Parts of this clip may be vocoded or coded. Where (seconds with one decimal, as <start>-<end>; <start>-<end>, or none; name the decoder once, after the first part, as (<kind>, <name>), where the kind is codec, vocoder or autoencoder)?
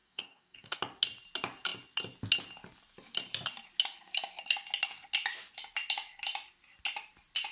0.0-0.8 (codec, DAC)